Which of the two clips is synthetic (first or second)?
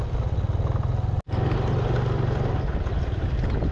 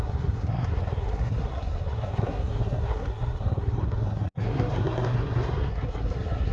second